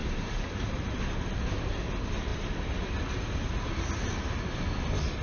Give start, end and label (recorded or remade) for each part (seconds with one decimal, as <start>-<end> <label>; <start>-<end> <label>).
0.0-1.0 remade; 1.0-5.2 recorded